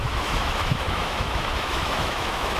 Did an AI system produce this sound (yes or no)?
yes